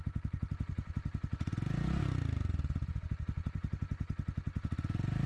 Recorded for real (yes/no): yes